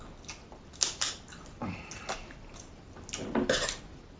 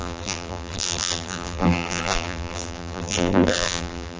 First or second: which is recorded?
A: first